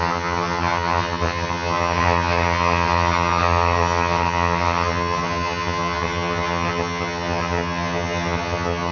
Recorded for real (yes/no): no